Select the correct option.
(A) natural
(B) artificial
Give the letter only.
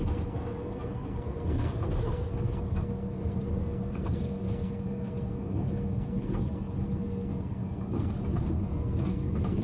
B